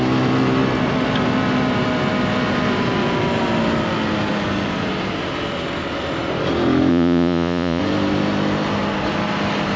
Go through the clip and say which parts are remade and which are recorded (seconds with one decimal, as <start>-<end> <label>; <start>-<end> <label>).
0.0-6.9 recorded; 6.9-7.8 remade; 7.8-9.8 recorded